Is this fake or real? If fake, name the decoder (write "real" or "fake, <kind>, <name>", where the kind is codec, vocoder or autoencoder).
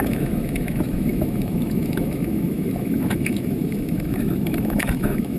fake, autoencoder, DAC-VAE